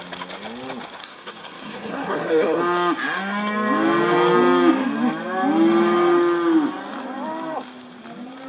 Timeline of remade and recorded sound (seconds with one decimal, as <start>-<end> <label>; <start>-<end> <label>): 0.0-1.0 recorded; 1.0-2.6 remade; 2.6-8.5 recorded